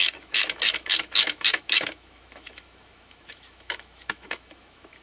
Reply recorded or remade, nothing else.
remade